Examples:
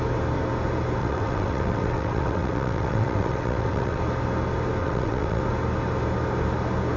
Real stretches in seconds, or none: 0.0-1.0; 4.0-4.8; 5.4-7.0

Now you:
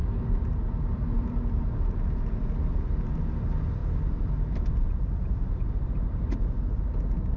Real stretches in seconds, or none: 3.2-3.8; 6.8-7.4

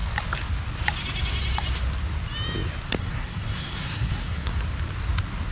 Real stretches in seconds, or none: 0.0-3.0; 4.5-5.5

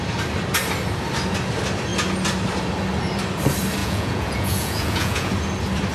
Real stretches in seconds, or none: 0.0-3.8; 5.3-5.9